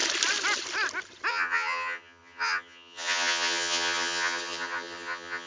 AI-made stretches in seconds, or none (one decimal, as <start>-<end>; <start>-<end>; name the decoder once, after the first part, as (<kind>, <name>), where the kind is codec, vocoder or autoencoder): 1.3-5.5 (vocoder, HiFi-GAN)